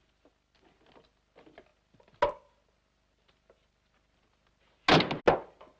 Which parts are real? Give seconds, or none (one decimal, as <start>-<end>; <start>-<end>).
0.0-5.8